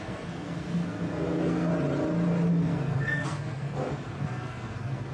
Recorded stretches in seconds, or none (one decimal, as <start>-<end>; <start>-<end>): 1.7-2.5